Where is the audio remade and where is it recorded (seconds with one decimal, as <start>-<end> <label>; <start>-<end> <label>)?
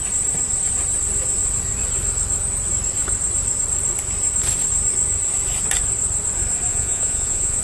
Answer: 0.0-6.7 recorded; 6.7-7.6 remade